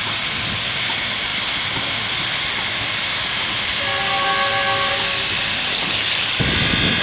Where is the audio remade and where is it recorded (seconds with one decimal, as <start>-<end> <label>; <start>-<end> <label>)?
0.0-5.7 recorded; 5.7-6.4 remade; 6.4-7.0 recorded